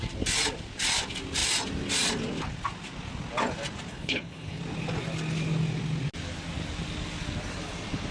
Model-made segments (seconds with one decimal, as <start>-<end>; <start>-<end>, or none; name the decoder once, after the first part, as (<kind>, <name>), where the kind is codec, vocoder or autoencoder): 3.9-4.6 (codec, HILCodec)